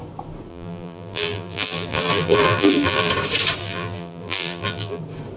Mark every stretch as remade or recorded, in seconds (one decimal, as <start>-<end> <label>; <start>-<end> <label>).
0.0-0.5 recorded; 0.5-3.1 remade; 3.1-3.6 recorded; 3.6-5.0 remade; 5.0-5.4 recorded